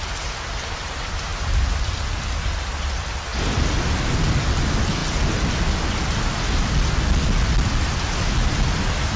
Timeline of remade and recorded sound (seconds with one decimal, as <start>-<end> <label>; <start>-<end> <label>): 0.0-9.2 recorded